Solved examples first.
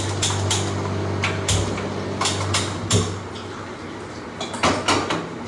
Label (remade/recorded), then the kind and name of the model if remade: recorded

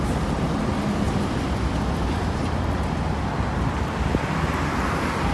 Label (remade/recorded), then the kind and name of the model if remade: recorded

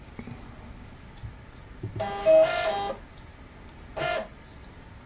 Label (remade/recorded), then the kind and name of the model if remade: recorded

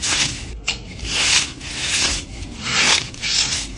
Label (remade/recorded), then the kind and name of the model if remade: remade, codec, SNAC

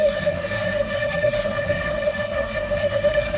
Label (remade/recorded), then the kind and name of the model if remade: remade, codec, SNAC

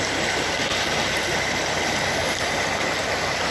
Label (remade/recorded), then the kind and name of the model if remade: recorded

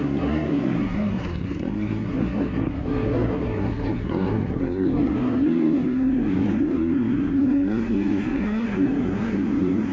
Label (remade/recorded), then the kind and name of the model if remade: remade, codec, SNAC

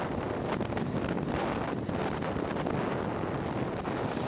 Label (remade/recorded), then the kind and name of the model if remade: recorded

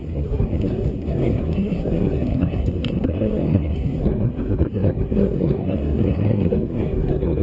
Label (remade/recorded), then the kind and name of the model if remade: remade, codec, SNAC